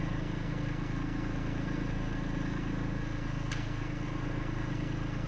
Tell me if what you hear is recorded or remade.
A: remade